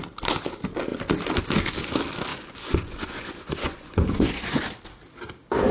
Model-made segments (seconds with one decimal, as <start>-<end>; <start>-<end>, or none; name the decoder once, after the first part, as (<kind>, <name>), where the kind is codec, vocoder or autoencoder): 2.3-4.7 (vocoder, Vocos)